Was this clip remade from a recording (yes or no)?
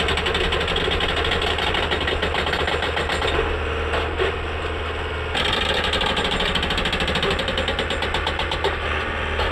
no